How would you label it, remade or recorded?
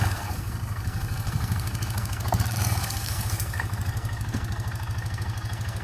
remade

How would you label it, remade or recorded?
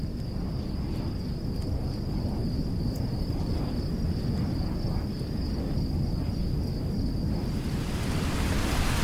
recorded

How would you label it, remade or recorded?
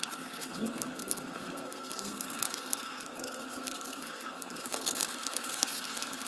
remade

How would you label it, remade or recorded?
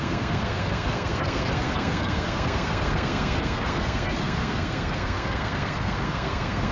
remade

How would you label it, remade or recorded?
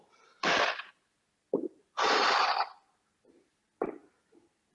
recorded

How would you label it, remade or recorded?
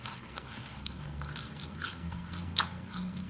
remade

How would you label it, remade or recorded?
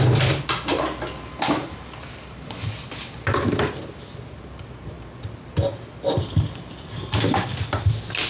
recorded